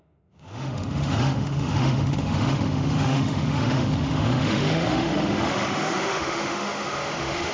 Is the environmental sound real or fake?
fake